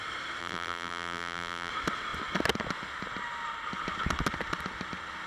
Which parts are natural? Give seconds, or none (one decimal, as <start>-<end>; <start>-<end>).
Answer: 0.0-0.4; 1.7-5.3